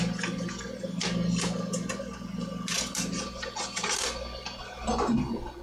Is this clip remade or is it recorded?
recorded